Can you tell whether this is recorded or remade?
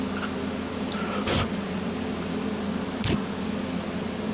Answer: recorded